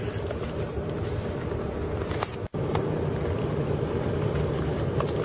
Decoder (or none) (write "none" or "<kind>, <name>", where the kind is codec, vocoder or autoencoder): vocoder, BigVGAN v2